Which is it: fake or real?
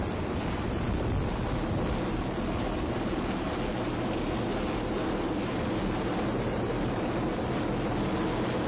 real